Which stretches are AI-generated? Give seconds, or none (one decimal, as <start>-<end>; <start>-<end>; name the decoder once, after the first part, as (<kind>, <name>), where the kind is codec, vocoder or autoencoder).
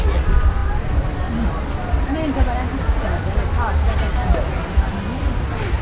none